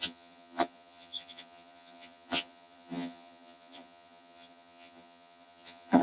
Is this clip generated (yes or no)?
yes